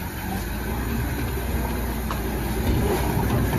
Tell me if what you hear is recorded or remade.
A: recorded